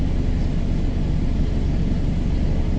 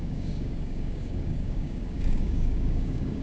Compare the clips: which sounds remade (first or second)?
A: second